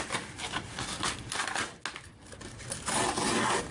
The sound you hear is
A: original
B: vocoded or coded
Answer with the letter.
A